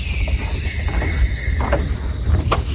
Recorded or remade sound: recorded